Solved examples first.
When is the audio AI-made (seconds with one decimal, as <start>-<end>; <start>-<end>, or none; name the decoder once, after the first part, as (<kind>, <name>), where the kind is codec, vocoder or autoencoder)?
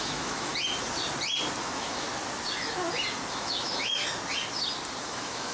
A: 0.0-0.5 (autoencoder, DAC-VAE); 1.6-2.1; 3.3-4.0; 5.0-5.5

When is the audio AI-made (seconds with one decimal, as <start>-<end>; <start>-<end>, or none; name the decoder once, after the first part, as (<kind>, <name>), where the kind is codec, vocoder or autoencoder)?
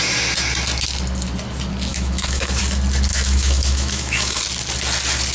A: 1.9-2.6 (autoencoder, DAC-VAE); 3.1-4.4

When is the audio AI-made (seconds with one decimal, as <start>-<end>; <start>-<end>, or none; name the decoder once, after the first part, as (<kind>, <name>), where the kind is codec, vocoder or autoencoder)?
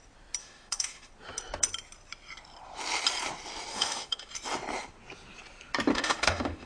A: 0.4-1.1 (autoencoder, DAC-VAE); 3.7-4.3; 5.9-6.7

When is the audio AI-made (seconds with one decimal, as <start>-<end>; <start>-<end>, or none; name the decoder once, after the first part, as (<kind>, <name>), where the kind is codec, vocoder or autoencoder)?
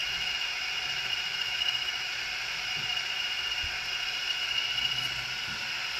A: 0.0-0.6 (autoencoder, DAC-VAE); 1.3-2.2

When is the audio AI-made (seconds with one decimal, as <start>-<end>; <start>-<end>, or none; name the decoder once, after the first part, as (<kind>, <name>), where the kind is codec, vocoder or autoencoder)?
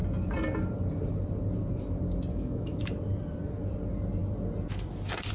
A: 2.3-2.8 (autoencoder, DAC-VAE)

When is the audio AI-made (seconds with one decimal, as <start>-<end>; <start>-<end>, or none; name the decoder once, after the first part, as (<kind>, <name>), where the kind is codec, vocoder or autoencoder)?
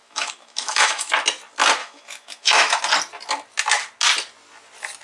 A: 0.0-1.1 (autoencoder, DAC-VAE); 1.8-2.8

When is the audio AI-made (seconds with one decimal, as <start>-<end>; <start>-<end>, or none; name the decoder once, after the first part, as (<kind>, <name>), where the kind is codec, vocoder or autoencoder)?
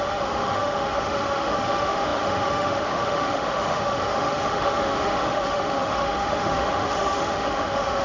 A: 0.0-8.0 (autoencoder, DAC-VAE)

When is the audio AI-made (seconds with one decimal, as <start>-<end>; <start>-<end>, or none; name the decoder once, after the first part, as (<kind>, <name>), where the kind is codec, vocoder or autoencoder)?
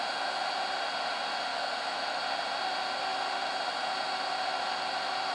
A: 1.5-2.2 (autoencoder, DAC-VAE)